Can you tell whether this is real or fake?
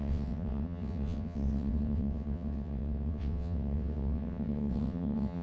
fake